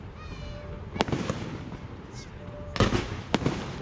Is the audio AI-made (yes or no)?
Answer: no